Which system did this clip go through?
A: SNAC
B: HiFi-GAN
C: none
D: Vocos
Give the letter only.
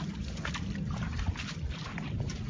C